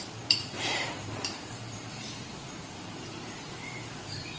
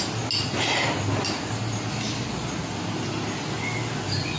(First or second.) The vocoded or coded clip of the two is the first